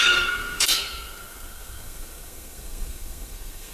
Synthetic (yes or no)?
yes